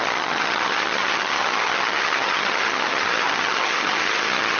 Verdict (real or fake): fake